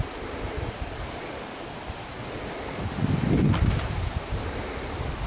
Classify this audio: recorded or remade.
recorded